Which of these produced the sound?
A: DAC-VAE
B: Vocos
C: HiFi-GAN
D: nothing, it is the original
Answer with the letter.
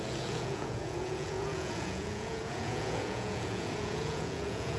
B